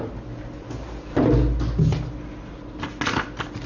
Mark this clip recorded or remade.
recorded